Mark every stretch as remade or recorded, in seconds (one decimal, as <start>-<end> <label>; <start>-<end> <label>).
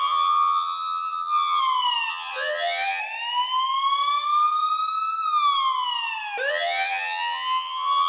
0.0-1.6 remade; 1.6-2.1 recorded; 2.1-3.0 remade; 3.0-6.5 recorded; 6.5-8.1 remade